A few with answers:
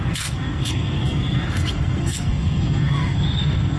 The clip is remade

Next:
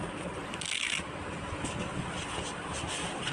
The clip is recorded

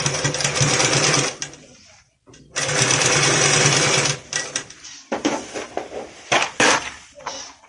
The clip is recorded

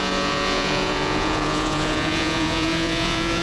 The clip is remade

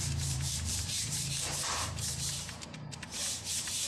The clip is remade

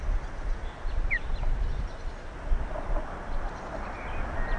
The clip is remade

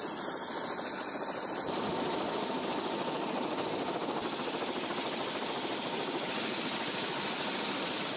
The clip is recorded